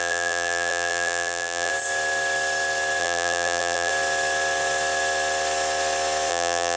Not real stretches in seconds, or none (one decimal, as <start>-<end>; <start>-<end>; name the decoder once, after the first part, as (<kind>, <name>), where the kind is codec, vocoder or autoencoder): 0.0-1.7 (vocoder, BigVGAN v2); 3.0-3.9; 6.3-6.8